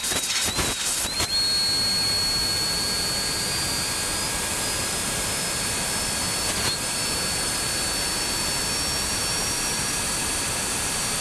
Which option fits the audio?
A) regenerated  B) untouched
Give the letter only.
B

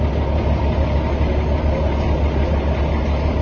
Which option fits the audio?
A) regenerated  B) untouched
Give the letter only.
B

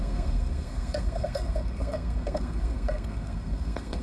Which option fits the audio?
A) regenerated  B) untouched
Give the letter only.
A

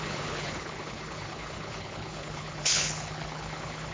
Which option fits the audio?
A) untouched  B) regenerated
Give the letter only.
B